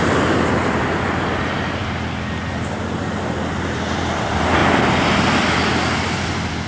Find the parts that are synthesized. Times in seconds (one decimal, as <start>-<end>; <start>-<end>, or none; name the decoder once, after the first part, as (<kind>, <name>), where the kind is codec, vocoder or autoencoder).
0.0-1.8 (vocoder, BigVGAN v2); 2.5-4.6; 5.7-6.7